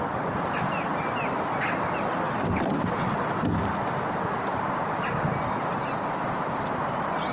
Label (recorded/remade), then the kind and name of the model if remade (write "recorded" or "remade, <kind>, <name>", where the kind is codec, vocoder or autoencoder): recorded